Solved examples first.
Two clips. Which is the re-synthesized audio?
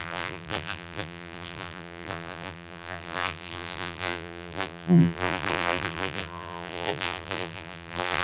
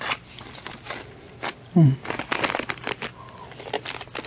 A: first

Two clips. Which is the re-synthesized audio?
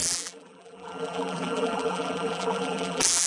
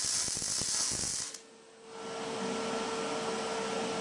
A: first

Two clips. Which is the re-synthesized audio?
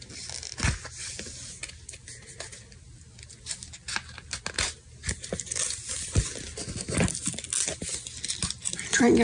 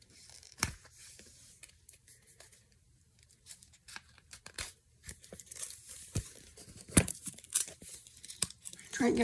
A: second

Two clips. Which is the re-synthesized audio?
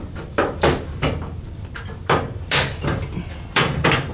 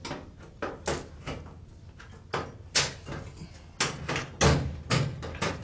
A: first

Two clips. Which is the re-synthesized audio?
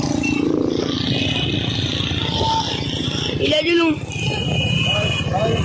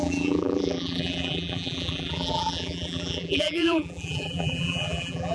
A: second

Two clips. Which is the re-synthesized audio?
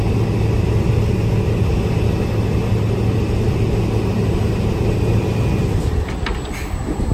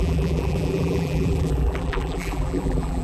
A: second